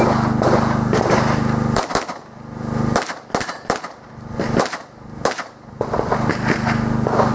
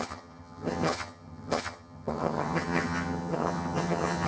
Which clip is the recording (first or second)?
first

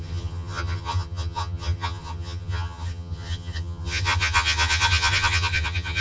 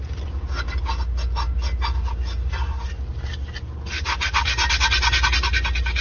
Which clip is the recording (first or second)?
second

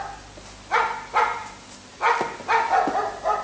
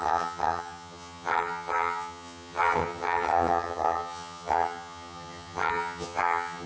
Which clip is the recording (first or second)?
first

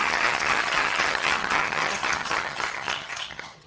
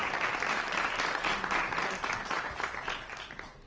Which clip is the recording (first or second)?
second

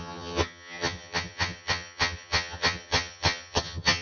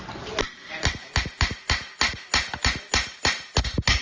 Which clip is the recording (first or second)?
second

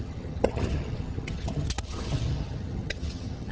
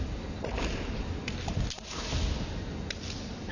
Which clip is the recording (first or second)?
second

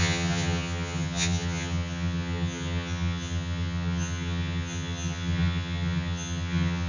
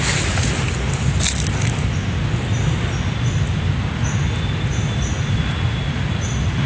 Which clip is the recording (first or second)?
second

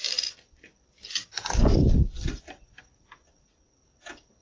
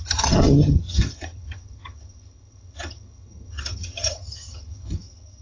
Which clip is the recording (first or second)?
first